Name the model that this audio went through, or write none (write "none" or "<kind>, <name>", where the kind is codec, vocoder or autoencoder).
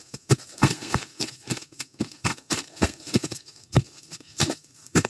codec, SNAC